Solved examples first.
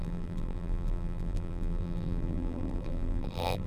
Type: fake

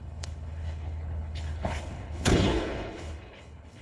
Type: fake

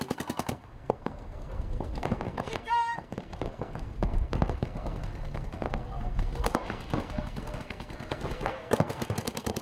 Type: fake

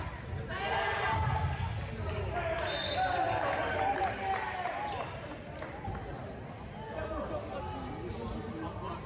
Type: real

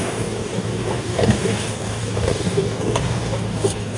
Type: fake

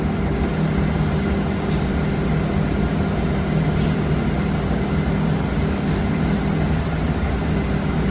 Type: real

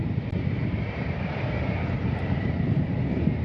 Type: fake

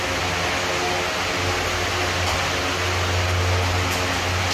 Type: real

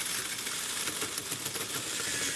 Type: real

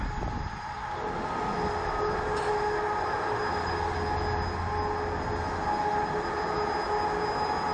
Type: real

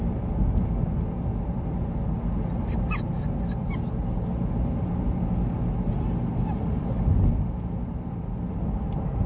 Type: real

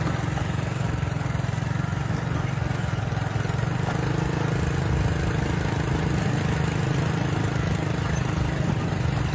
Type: real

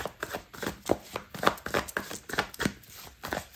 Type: real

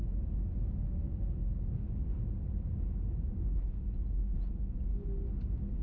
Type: real